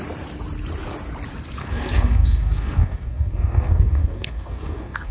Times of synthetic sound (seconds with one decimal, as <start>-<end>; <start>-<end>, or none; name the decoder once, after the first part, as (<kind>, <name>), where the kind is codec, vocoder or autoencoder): 1.6-5.1 (codec, SNAC)